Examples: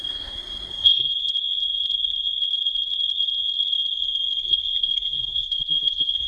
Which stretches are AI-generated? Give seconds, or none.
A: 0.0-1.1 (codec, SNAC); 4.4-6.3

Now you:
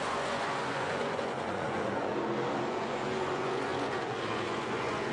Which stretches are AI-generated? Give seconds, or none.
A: 0.0-2.1 (vocoder, Vocos); 2.7-5.1

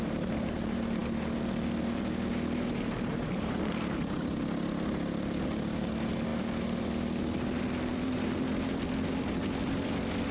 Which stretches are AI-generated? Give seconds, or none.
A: 7.9-9.9 (vocoder, BigVGAN v2)

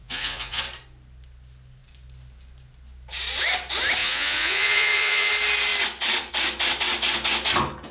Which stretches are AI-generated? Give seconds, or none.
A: 0.0-0.6 (vocoder, Vocos); 4.0-5.3

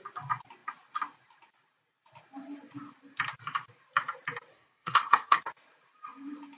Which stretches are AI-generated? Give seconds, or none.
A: 4.5-5.4 (codec, SNAC)